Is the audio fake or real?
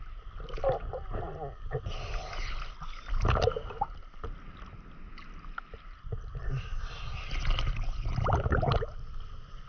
real